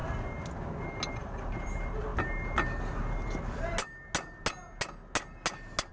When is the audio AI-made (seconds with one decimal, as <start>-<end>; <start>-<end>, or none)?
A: 1.2-2.1